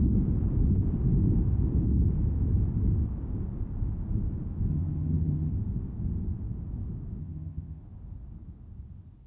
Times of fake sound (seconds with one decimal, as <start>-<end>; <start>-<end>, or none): 4.7-5.5; 7.2-7.8